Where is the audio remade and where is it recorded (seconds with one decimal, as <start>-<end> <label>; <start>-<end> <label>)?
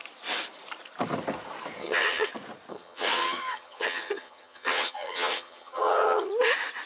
0.0-1.8 recorded; 1.8-2.3 remade; 2.3-2.7 recorded; 2.7-6.3 remade; 6.3-6.9 recorded